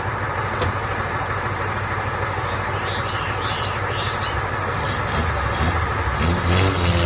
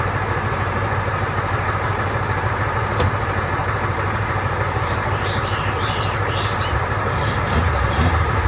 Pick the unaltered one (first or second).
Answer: first